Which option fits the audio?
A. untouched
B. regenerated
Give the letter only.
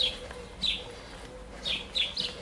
A